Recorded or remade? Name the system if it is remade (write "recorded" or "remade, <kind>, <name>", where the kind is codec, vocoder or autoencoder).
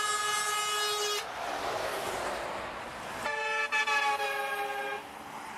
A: recorded